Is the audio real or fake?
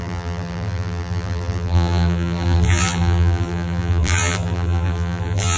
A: fake